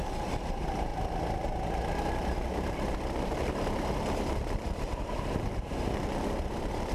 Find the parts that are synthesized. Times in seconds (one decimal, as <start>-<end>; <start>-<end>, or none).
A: 0.0-0.9; 2.1-6.9